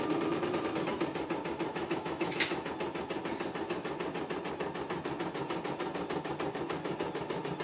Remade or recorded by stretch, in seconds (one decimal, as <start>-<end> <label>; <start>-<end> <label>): 0.0-1.7 recorded; 1.7-2.7 remade; 2.7-7.6 recorded